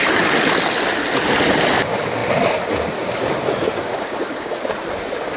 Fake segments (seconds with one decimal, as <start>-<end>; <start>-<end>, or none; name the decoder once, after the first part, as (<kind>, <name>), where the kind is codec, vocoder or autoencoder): 3.9-4.6 (codec, DAC)